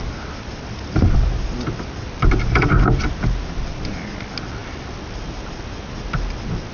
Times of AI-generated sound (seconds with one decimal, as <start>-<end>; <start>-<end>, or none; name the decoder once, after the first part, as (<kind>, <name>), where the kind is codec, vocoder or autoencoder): none